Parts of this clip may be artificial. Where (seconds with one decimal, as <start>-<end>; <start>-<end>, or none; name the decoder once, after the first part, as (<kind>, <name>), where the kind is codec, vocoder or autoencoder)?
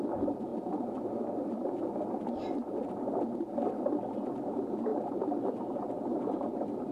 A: none